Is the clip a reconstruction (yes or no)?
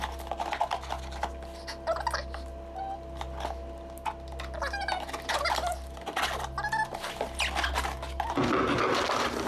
no